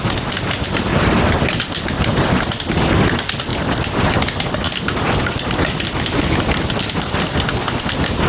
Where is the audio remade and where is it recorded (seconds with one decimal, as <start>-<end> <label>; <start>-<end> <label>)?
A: 0.0-0.9 recorded; 0.9-2.7 remade; 2.7-3.5 recorded; 3.5-5.5 remade; 5.5-8.3 recorded